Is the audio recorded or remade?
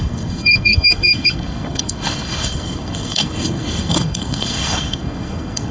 remade